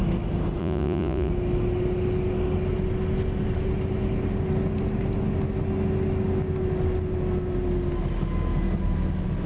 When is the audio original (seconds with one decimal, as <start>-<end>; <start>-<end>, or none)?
0.0-0.6; 1.3-9.5